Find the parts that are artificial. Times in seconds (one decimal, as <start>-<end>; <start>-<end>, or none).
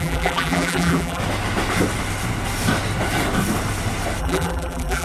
0.0-1.2; 4.2-5.0